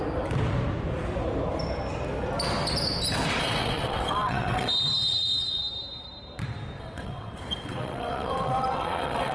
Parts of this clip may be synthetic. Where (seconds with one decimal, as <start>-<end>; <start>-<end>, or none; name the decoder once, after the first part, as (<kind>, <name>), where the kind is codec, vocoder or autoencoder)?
3.4-5.6 (vocoder, WaveNeXt); 6.8-9.3